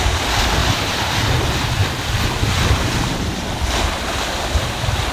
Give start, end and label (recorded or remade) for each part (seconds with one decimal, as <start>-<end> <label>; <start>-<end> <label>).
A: 0.0-0.6 recorded; 0.6-1.1 remade; 1.1-5.1 recorded